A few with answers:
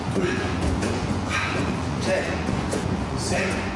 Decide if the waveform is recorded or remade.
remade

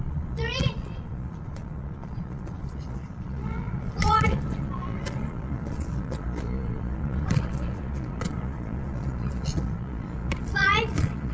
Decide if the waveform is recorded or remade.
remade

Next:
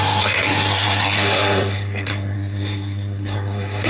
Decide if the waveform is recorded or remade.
remade